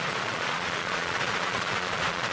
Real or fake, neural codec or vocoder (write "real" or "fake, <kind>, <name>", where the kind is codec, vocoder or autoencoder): fake, vocoder, Vocos